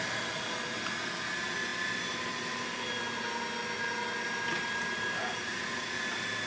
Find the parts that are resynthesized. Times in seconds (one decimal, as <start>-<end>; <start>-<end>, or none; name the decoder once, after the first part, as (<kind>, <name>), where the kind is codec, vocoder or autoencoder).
none